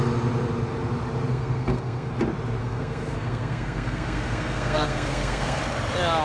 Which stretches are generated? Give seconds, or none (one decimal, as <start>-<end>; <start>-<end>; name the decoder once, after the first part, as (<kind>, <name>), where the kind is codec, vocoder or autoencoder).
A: 1.3-2.1 (codec, SNAC); 2.6-5.6